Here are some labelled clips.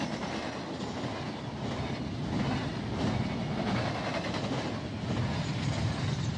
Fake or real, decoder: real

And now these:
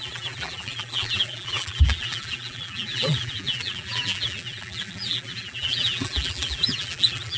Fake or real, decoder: fake, vocoder, BigVGAN v2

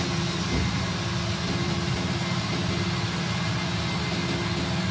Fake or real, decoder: real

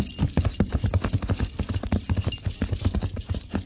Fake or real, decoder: real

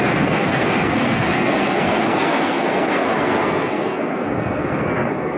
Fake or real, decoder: fake, codec, SNAC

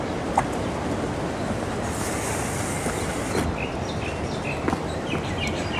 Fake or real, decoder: real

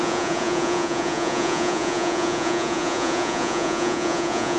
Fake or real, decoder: fake, vocoder, Vocos